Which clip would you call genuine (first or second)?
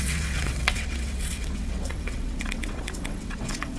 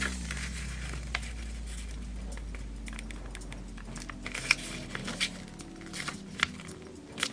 second